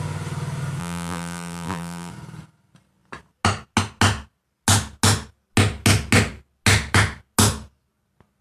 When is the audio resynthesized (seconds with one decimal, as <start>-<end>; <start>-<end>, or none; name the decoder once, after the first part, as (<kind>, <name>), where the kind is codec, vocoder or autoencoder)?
0.8-2.1 (vocoder, BigVGAN v2)